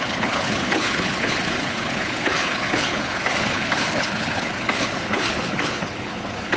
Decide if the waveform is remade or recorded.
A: remade